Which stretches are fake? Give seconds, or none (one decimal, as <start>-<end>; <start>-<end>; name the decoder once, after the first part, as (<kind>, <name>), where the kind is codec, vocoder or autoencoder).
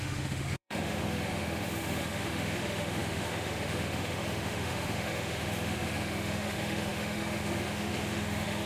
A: 0.0-8.7 (autoencoder, DAC-VAE)